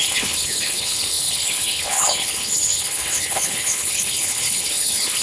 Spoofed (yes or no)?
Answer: yes